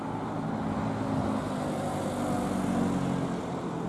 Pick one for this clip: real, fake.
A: real